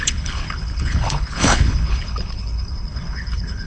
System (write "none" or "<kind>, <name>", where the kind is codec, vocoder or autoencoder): codec, HILCodec